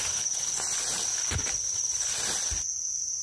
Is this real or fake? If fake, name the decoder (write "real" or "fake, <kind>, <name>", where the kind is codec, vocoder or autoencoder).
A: real